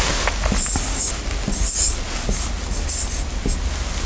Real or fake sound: real